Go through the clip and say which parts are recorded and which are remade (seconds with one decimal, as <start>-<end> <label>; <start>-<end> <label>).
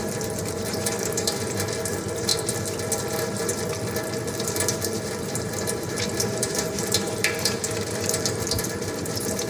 0.0-2.3 remade; 2.3-3.1 recorded; 3.1-3.5 remade; 3.5-4.3 recorded; 4.3-9.5 remade